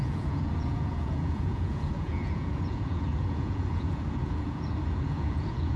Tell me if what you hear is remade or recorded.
remade